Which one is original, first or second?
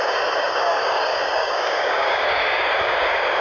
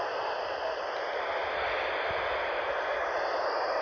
second